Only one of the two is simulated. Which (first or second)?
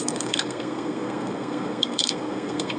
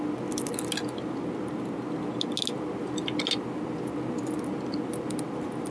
first